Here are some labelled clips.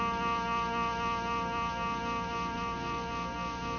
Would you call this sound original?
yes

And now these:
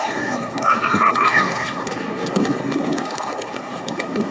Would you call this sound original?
no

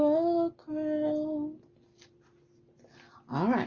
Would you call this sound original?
yes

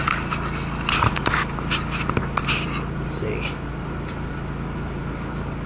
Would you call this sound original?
yes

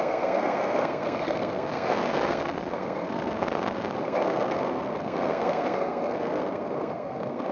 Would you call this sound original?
no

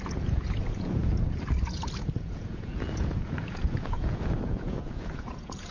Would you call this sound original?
no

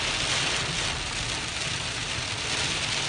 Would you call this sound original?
yes